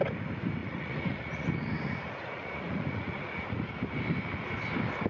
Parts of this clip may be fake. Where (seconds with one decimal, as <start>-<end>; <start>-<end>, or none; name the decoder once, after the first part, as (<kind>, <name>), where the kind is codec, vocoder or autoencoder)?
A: 0.6-3.7 (vocoder, Vocos)